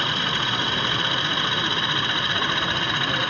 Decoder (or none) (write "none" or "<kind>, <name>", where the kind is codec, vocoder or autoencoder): none